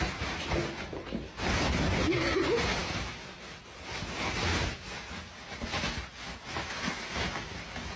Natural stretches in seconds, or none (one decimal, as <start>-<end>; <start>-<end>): 0.0-8.0